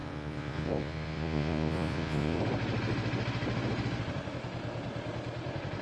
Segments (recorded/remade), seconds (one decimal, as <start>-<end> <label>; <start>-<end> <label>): 0.0-2.4 remade; 2.4-5.8 recorded